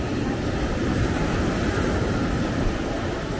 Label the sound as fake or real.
real